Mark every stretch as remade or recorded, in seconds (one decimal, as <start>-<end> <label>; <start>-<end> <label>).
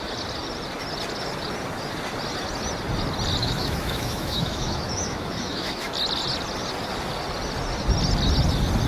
0.0-3.4 recorded; 3.4-5.9 remade; 5.9-8.9 recorded